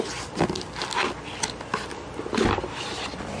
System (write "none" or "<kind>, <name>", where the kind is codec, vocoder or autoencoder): none